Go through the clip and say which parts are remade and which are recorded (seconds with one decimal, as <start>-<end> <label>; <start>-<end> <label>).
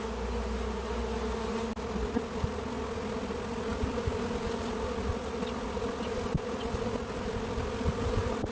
0.0-8.5 recorded